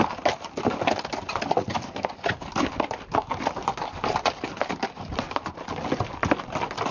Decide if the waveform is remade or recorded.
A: recorded